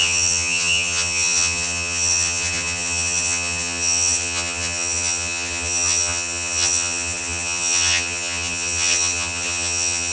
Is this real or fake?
fake